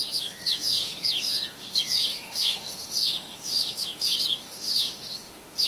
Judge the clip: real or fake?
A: fake